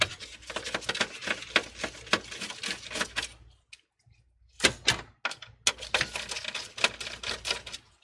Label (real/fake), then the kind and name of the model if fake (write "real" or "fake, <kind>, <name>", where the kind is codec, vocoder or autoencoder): real